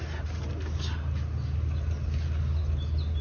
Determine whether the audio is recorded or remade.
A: recorded